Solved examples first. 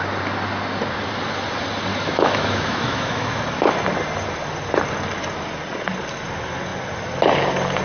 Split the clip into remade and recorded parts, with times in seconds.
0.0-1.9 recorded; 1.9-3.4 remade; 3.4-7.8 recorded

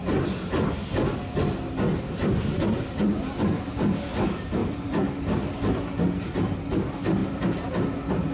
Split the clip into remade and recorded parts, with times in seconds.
0.0-2.2 recorded; 2.2-2.9 remade; 2.9-4.6 recorded; 4.6-5.1 remade; 5.1-7.2 recorded; 7.2-7.7 remade; 7.7-8.3 recorded

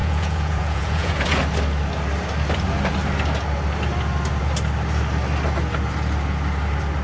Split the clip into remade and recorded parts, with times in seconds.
0.0-1.4 remade; 1.4-7.0 recorded

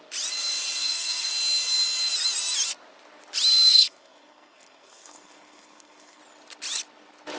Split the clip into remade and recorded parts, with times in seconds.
0.0-0.8 recorded; 0.8-1.3 remade; 1.3-3.7 recorded; 3.7-6.2 remade; 6.2-7.4 recorded

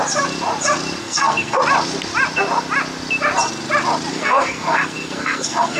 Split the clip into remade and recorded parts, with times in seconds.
0.0-1.0 recorded; 1.0-1.6 remade; 1.6-4.1 recorded; 4.1-5.8 remade